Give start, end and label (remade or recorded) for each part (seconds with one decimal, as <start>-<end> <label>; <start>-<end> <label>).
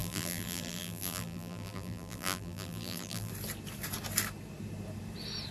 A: 0.0-3.3 remade; 3.3-5.5 recorded